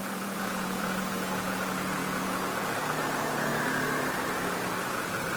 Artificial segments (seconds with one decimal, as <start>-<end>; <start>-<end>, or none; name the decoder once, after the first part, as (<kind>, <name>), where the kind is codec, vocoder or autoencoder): 0.0-3.5 (vocoder, Vocos); 4.8-5.4